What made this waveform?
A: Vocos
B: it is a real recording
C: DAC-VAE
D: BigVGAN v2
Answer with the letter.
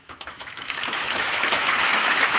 C